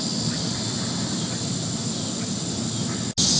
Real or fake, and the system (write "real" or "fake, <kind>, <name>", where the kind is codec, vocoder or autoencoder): real